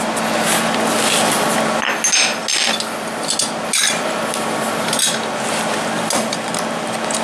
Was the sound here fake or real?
real